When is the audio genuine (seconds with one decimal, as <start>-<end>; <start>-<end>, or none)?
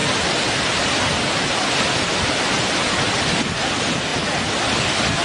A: 0.0-5.2